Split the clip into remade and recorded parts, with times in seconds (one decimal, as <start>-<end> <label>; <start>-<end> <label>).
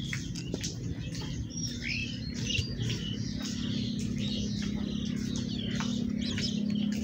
0.0-2.0 recorded; 2.0-2.6 remade; 2.6-7.0 recorded